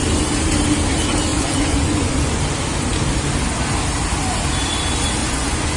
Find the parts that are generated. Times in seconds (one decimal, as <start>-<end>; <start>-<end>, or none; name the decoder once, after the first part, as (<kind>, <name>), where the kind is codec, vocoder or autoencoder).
1.3-2.4 (vocoder, Vocos); 5.2-5.8